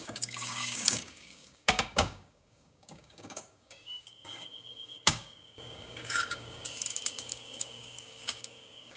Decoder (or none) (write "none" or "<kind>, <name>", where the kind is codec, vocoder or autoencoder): codec, DAC